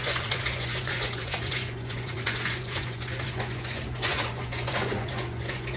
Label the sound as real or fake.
fake